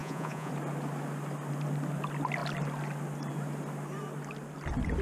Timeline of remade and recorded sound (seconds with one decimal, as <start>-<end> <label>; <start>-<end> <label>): 0.0-0.5 remade; 0.5-5.0 recorded